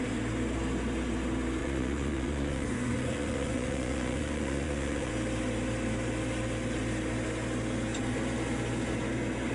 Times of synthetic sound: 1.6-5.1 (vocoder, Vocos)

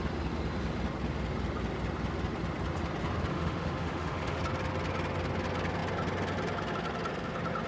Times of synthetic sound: 3.3-4.4 (autoencoder, DAC-VAE)

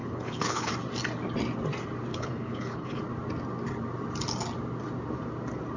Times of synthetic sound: 0.0-0.7 (codec, HILCodec); 2.1-3.0